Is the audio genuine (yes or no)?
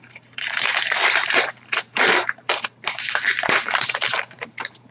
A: no